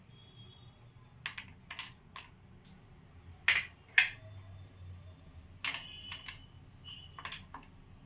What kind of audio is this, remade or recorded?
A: recorded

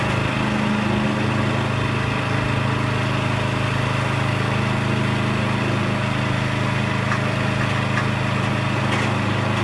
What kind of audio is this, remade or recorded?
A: recorded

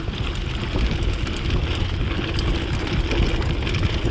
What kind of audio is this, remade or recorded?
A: recorded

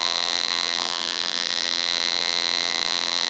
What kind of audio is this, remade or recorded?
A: remade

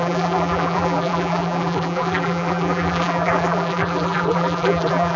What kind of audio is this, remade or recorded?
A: remade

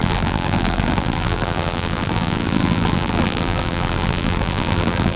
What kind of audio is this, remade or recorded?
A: remade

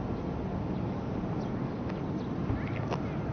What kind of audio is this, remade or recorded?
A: recorded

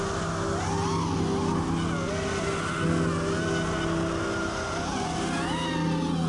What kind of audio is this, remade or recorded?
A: recorded